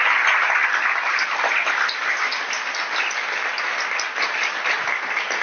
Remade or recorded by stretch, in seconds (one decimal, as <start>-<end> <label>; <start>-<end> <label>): 0.0-5.4 recorded